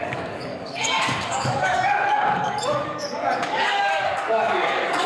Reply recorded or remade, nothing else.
remade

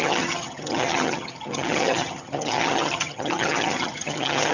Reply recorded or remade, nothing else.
remade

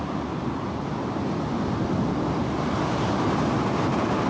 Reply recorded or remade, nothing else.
recorded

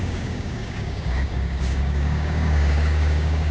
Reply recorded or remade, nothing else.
remade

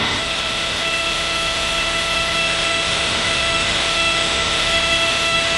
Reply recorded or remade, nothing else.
remade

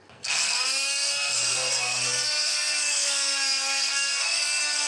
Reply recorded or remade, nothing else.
remade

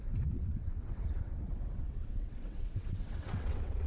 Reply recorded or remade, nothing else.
remade